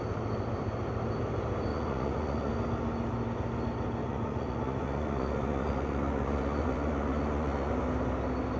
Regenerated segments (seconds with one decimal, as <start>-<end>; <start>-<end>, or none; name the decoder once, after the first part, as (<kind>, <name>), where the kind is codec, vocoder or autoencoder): 1.7-2.5 (vocoder, Vocos); 4.0-7.7